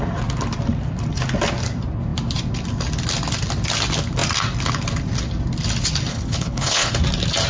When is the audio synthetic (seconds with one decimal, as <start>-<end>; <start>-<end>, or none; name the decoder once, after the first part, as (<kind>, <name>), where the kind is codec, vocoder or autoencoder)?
6.1-6.9 (codec, HILCodec)